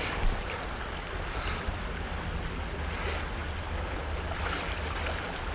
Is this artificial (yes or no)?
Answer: no